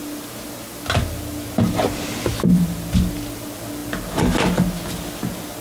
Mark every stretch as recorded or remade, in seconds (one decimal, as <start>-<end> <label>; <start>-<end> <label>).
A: 0.0-5.6 recorded